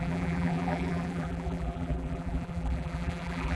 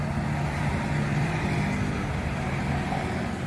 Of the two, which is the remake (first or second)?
first